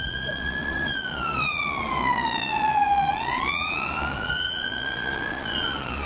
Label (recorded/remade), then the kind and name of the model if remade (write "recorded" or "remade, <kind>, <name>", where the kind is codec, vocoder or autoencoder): remade, vocoder, Vocos